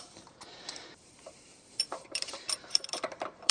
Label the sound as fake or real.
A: fake